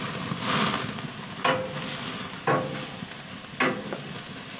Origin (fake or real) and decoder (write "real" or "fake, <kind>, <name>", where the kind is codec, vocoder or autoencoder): real